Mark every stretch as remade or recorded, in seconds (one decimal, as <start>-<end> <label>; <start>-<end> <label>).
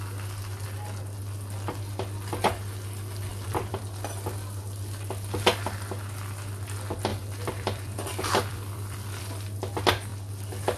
0.0-3.3 recorded; 3.3-3.8 remade; 3.8-7.1 recorded; 7.1-9.2 remade; 9.2-10.8 recorded